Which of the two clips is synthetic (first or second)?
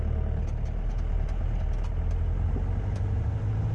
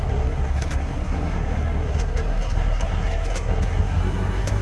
second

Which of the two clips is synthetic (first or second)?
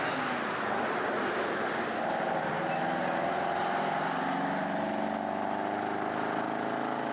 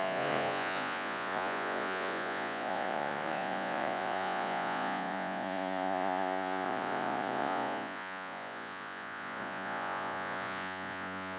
second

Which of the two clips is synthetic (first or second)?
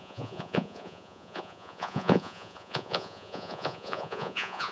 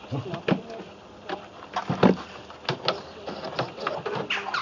first